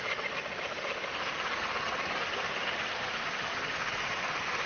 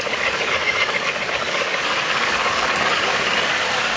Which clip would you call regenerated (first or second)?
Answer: second